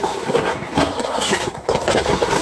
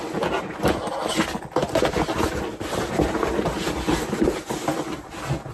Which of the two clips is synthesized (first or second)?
first